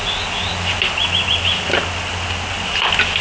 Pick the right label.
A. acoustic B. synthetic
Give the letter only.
A